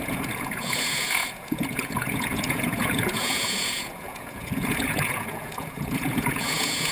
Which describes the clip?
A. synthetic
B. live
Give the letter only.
A